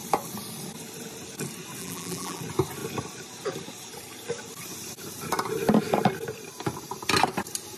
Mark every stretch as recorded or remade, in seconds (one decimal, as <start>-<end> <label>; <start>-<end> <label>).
0.0-1.8 recorded; 1.8-2.4 remade; 2.4-7.8 recorded